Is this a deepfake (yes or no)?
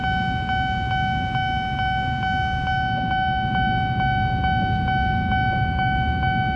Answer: no